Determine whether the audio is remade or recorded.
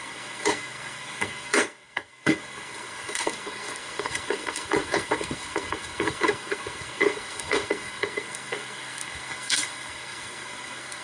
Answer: remade